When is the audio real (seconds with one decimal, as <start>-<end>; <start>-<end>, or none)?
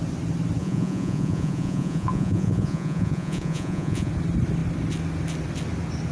0.0-0.6; 4.1-6.1